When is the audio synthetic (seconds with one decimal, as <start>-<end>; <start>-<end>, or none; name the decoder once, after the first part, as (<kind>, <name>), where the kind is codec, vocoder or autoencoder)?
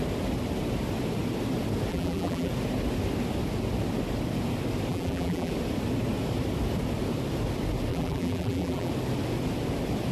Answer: 1.9-2.5 (vocoder, BigVGAN v2); 4.9-5.5; 7.9-8.9